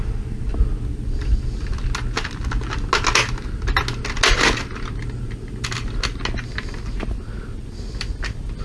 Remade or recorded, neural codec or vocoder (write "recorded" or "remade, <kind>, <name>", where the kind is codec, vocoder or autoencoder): recorded